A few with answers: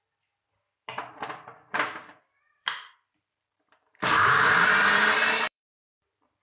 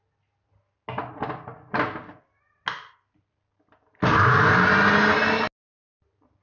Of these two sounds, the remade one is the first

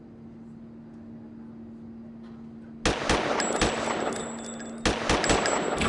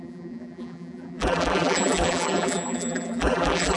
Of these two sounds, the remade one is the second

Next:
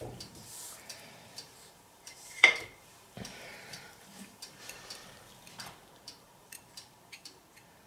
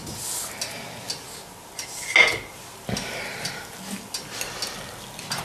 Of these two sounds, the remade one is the first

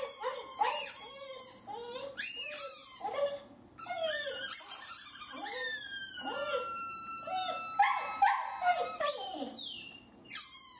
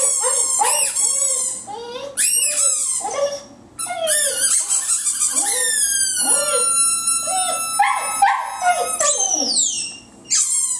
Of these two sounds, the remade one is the first